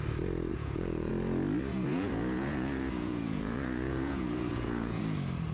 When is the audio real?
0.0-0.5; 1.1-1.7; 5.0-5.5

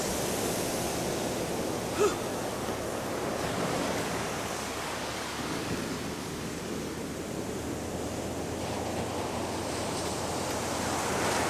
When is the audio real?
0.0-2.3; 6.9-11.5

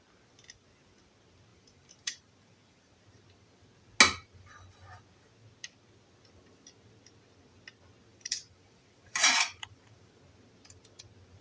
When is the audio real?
0.0-1.5; 2.9-8.1; 10.2-11.4

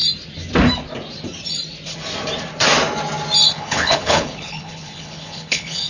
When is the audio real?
0.0-3.5